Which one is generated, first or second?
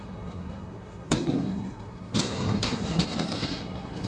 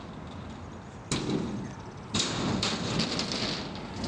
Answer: first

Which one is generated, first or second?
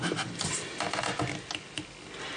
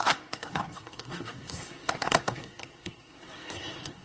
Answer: second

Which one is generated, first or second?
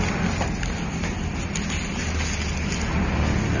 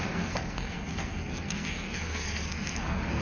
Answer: second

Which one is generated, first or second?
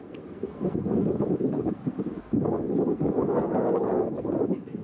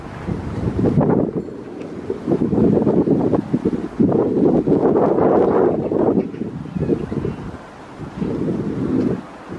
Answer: first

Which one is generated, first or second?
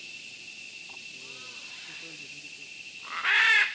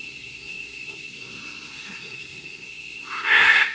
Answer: second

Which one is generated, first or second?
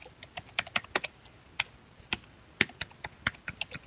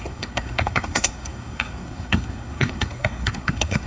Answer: second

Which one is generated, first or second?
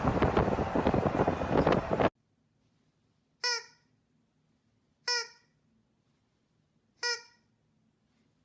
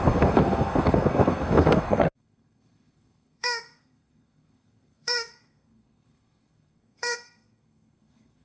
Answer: second